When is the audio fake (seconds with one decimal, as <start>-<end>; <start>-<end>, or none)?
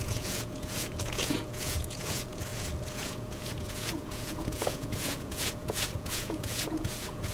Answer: 0.0-7.3